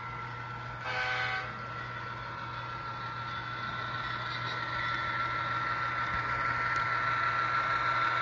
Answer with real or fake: real